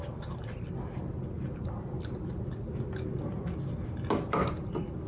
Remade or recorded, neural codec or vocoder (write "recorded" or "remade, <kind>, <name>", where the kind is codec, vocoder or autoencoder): recorded